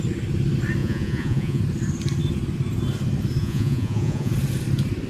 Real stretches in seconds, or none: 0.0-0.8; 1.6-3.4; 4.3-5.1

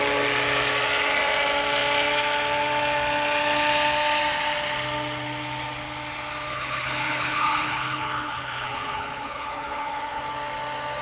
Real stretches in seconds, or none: 0.0-6.5; 10.2-11.0

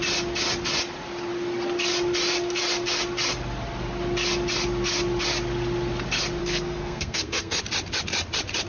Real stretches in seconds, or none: 0.0-6.4; 7.6-8.7